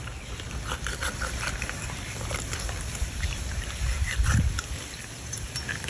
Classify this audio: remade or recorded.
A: remade